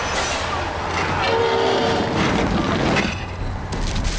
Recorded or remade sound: recorded